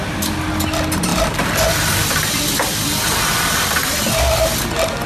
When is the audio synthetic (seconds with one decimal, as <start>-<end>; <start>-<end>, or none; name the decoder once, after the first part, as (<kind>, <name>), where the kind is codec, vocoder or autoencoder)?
1.1-2.3 (vocoder, BigVGAN v2)